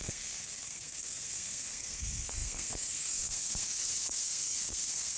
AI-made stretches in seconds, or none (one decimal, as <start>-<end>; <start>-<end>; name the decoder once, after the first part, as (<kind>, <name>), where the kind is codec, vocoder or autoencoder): 0.0-5.2 (codec, SNAC)